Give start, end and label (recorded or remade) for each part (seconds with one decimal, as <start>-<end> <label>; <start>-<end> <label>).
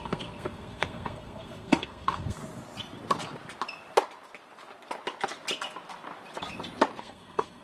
0.0-2.4 remade; 2.4-7.0 recorded; 7.0-7.6 remade